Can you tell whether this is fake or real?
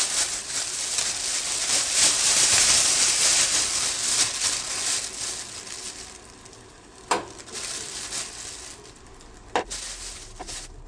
real